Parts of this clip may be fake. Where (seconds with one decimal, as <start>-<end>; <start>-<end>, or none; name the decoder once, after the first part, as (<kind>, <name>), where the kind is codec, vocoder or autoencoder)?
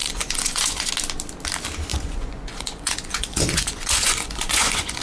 0.0-0.9 (vocoder, Vocos); 1.9-5.0